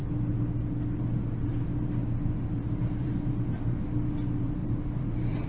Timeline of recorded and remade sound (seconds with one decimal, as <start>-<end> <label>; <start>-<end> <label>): 0.0-2.0 recorded; 2.0-3.2 remade; 3.2-4.6 recorded; 4.6-5.5 remade